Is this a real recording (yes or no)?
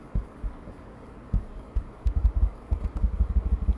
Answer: no